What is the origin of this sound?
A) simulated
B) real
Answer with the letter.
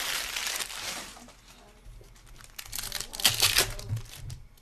B